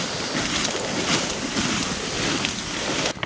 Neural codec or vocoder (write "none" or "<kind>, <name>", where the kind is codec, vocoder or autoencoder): none